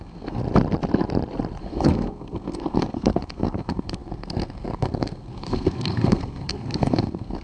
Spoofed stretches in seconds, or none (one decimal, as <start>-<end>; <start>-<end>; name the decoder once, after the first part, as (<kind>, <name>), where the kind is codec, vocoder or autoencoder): 0.0-0.4 (codec, SNAC); 1.6-7.4